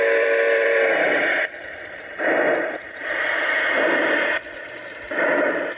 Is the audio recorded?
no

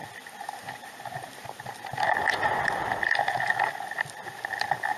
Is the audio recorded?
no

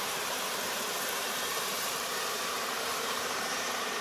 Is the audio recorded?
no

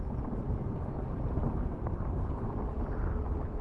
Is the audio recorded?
yes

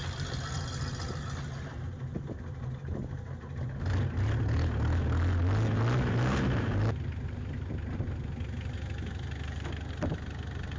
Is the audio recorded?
yes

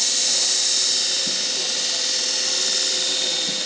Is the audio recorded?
yes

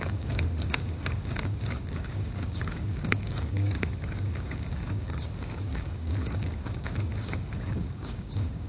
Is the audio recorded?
no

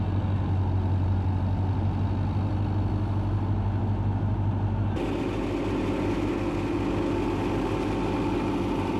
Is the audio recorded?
yes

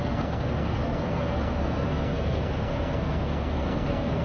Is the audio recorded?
no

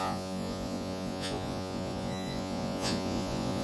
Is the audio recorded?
no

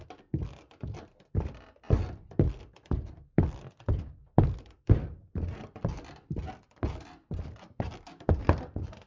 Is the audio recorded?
yes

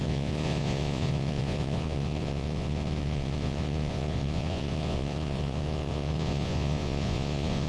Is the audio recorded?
no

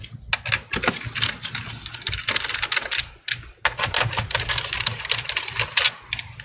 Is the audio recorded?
yes